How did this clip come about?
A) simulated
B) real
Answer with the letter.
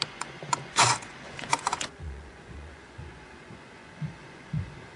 A